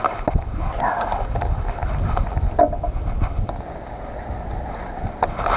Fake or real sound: real